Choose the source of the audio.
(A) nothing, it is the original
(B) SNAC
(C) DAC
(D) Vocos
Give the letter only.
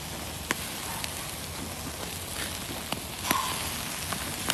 A